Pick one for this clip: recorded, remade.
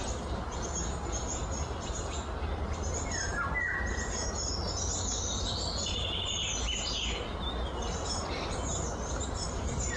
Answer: recorded